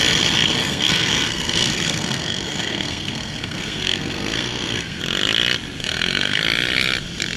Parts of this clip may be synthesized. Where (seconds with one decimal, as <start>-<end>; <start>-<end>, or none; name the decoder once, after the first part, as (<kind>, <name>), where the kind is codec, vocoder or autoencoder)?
0.6-5.0 (codec, SNAC); 5.8-6.4